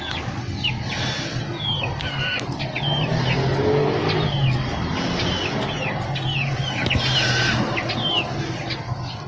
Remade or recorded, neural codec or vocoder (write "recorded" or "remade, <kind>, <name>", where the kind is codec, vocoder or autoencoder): recorded